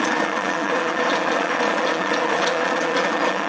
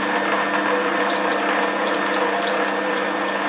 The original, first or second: second